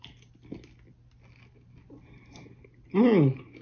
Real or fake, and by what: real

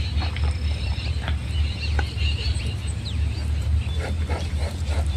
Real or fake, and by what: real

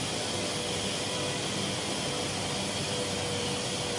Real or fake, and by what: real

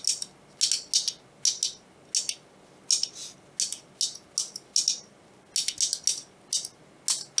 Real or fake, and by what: real